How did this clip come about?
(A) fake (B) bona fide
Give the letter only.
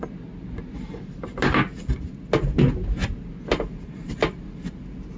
B